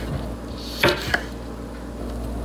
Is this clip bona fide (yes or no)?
yes